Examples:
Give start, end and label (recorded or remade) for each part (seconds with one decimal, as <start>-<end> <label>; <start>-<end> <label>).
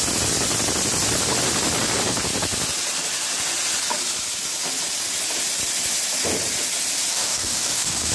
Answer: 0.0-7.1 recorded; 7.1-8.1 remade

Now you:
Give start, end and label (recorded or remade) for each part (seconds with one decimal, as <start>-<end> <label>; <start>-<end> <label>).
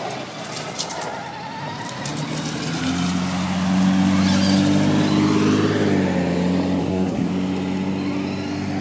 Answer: 0.0-6.8 recorded; 6.8-7.3 remade; 7.3-8.8 recorded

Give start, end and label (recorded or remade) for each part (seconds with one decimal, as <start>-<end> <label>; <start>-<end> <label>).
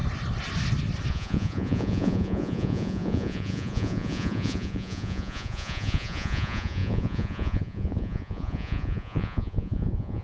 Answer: 0.0-1.1 recorded; 1.1-10.2 remade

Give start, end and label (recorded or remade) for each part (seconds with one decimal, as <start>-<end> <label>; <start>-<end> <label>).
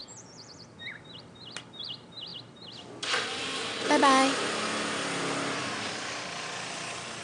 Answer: 0.0-0.5 remade; 0.5-7.2 recorded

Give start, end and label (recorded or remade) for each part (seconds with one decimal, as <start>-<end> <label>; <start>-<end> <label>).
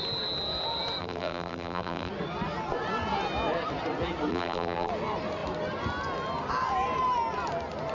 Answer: 0.0-1.0 recorded; 1.0-2.1 remade; 2.1-4.3 recorded; 4.3-4.9 remade; 4.9-7.9 recorded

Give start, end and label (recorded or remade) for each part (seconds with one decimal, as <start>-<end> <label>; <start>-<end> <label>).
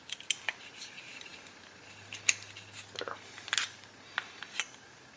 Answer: 0.0-5.2 recorded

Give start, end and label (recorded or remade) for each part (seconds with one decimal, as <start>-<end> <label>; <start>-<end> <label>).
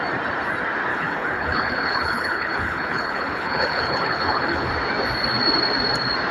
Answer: 0.0-0.9 recorded; 0.9-4.7 remade; 4.7-6.3 recorded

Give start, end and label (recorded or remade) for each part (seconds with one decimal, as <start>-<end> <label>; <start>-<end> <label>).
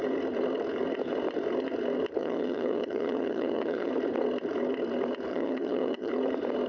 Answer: 0.0-2.2 recorded; 2.2-3.9 remade; 3.9-5.3 recorded; 5.3-6.1 remade; 6.1-6.7 recorded